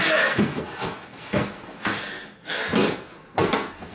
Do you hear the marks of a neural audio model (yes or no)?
yes